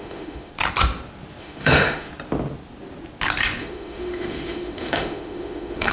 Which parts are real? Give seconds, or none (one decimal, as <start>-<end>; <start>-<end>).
0.5-1.4; 2.1-3.6